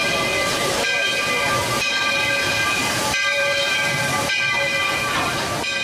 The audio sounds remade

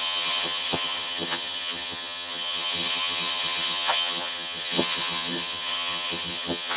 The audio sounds remade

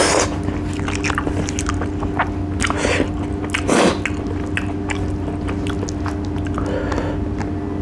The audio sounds recorded